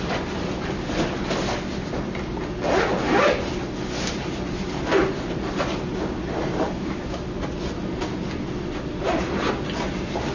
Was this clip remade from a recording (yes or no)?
no